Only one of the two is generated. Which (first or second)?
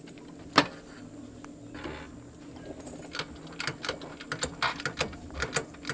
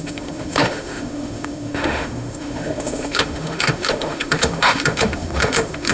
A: second